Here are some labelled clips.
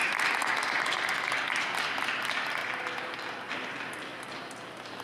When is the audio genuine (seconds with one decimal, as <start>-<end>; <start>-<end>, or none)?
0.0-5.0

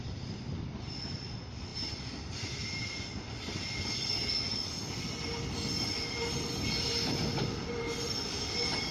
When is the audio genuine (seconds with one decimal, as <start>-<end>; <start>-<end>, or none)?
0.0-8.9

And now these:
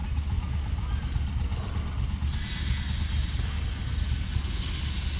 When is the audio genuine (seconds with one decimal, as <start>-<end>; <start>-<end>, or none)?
0.0-5.2